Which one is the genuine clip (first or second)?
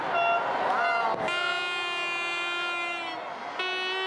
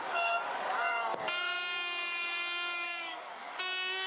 first